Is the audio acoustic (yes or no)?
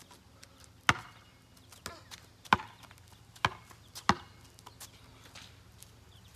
yes